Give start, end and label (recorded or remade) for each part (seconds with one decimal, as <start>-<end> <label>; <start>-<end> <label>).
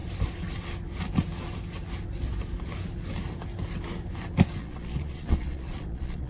0.0-4.6 recorded; 4.6-6.3 remade